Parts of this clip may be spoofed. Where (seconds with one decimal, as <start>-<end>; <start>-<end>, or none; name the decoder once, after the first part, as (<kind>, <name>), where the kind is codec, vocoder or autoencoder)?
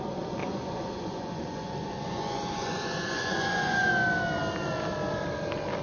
0.4-3.9 (vocoder, Vocos)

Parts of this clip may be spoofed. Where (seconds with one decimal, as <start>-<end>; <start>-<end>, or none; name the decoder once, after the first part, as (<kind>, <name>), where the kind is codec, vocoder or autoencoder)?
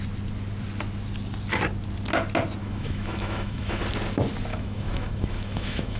2.6-3.8 (autoencoder, DAC-VAE); 4.5-6.0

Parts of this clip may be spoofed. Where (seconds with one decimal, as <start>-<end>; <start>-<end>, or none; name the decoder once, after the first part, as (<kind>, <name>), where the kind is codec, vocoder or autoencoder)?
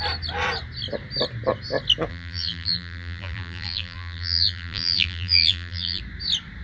2.1-6.0 (vocoder, BigVGAN v2)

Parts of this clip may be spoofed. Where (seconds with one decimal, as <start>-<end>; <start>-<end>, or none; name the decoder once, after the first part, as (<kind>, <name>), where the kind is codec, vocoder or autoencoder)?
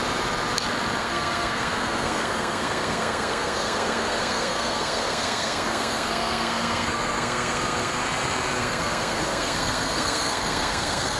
1.0-8.0 (codec, SNAC); 8.6-11.2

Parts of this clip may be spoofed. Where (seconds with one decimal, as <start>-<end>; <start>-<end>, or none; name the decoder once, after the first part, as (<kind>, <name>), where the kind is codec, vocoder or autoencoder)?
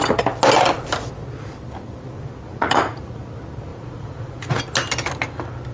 2.5-3.2 (vocoder, Vocos); 3.7-4.6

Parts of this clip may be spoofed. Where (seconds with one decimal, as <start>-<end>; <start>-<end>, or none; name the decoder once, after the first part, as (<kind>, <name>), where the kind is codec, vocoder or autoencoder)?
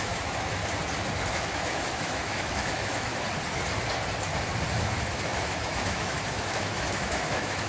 0.0-0.6 (autoencoder, DAC-VAE); 1.3-3.1; 4.8-7.7